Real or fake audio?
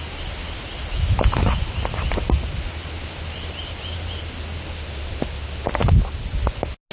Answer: real